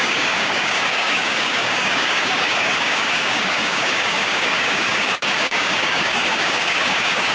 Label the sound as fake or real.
fake